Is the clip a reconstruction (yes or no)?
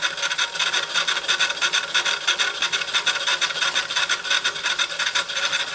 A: no